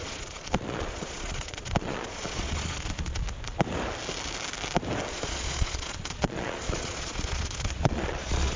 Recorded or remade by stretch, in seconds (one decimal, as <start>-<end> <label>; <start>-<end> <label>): 0.0-3.2 remade; 3.2-5.1 recorded; 5.1-8.6 remade